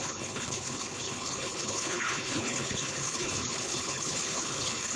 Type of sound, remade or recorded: remade